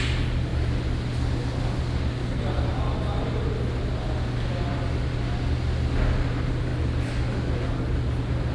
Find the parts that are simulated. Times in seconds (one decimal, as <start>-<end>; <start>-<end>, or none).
2.2-2.7